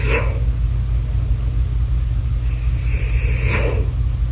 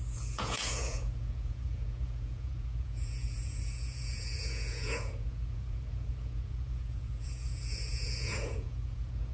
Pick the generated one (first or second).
second